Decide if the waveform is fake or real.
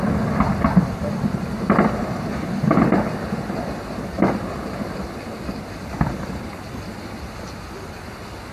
real